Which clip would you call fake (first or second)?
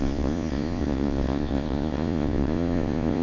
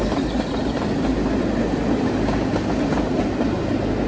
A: first